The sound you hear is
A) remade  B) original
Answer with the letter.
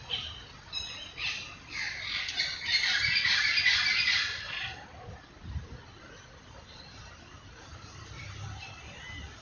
B